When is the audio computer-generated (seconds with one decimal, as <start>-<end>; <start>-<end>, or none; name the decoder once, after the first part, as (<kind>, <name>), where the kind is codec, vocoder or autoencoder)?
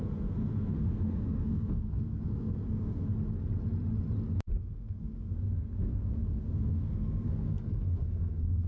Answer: 0.0-3.1 (codec, SNAC); 4.6-8.7